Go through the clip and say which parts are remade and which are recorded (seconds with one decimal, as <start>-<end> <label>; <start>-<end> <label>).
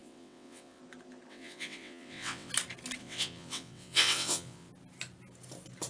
0.0-0.8 remade; 0.8-1.3 recorded; 1.3-2.5 remade; 2.5-3.0 recorded; 3.0-4.7 remade; 4.7-5.9 recorded